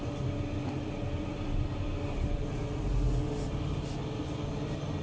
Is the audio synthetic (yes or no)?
no